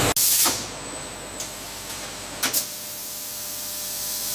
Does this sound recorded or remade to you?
recorded